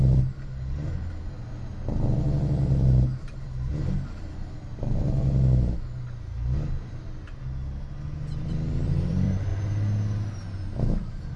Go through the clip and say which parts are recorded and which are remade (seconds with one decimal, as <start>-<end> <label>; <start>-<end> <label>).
0.0-1.7 remade; 1.7-2.2 recorded; 2.2-3.7 remade; 3.7-8.4 recorded; 8.4-9.5 remade; 9.5-11.4 recorded